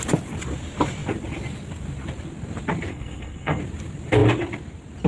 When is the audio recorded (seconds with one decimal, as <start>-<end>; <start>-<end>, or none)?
0.0-2.9; 3.6-5.1